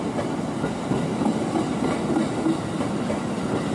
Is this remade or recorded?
recorded